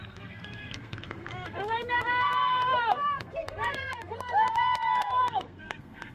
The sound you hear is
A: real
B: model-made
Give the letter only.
B